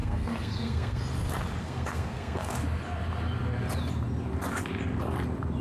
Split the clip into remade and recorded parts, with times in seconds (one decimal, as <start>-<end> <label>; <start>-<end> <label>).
0.0-1.0 remade; 1.0-1.6 recorded; 1.6-2.5 remade; 2.5-5.6 recorded